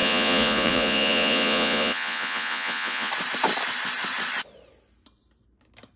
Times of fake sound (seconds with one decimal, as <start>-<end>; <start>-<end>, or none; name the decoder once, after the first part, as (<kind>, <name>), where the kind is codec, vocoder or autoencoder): 0.0-3.1 (vocoder, Vocos)